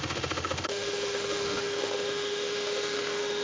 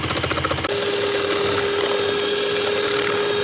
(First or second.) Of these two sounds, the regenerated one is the first